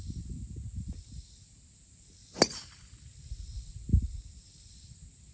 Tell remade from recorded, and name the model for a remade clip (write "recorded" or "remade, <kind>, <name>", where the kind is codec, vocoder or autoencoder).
recorded